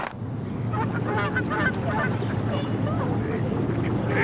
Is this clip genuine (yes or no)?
yes